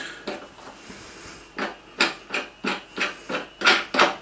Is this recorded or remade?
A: recorded